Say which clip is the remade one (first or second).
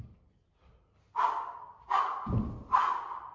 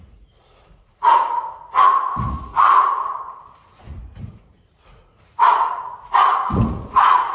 second